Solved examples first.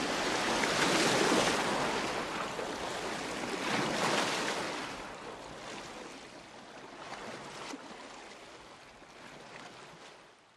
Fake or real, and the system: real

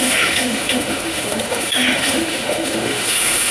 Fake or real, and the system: fake, autoencoder, DAC-VAE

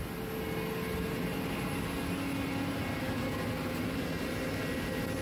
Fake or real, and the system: real